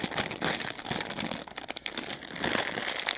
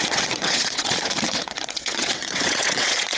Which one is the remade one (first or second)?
second